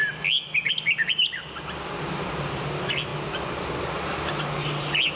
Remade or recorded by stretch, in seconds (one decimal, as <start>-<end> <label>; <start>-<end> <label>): 0.0-5.2 recorded